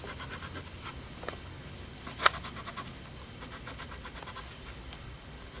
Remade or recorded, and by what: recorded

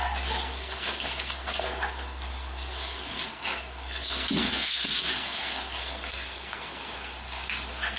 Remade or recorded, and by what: remade, codec, SNAC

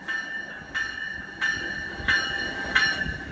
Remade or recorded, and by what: recorded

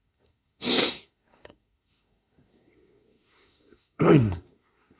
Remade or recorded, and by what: remade, codec, SNAC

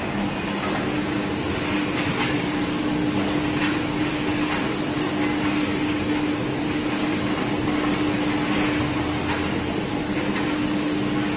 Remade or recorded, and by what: recorded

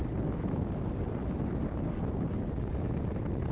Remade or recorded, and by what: recorded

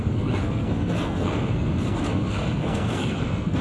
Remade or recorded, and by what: remade, codec, SNAC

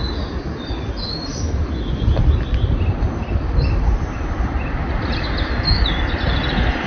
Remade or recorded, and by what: recorded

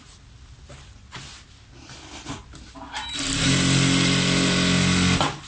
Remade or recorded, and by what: recorded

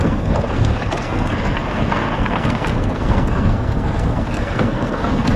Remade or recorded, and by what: remade, codec, SNAC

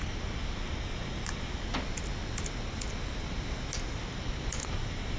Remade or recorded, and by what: recorded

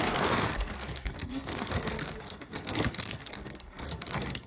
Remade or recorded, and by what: remade, codec, SNAC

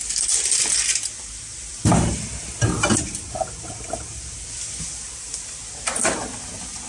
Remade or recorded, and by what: recorded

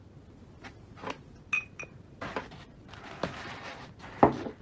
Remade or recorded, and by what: recorded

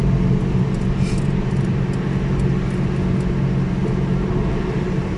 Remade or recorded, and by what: recorded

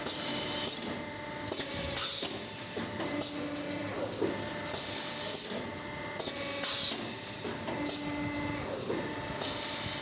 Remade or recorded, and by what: recorded